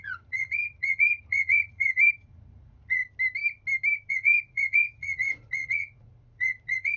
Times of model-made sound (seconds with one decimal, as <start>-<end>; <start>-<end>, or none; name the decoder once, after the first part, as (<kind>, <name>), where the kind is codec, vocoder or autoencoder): 0.0-3.0 (vocoder, Vocos); 4.1-7.0